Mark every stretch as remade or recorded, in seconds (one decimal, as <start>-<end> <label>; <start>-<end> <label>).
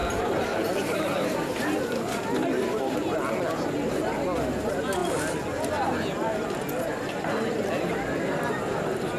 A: 0.0-2.2 remade; 2.2-9.2 recorded